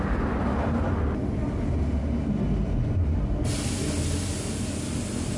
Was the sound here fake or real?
real